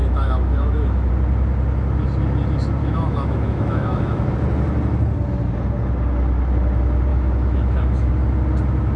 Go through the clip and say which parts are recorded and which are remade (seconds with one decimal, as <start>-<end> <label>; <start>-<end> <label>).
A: 0.0-1.1 remade; 1.1-2.8 recorded; 2.8-4.3 remade; 4.3-7.1 recorded; 7.1-8.1 remade; 8.1-9.0 recorded